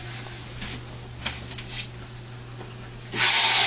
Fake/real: real